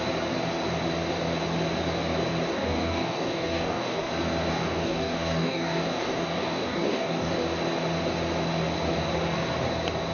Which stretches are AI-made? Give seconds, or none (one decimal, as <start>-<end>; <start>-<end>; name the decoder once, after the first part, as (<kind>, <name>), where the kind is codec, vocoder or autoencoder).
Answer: 2.5-4.1 (codec, DAC); 4.5-7.3